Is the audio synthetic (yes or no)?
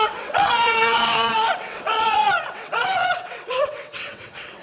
yes